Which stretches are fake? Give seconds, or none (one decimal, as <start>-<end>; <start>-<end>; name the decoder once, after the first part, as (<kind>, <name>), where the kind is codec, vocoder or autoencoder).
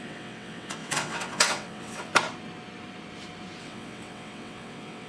0.0-2.1 (vocoder, WaveNeXt); 3.6-5.1